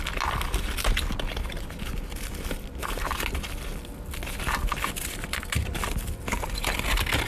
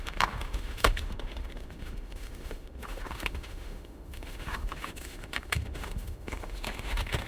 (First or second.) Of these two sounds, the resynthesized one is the second